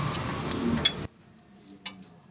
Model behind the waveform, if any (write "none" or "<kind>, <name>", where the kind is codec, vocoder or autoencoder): none